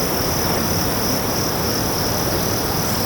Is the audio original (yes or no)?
yes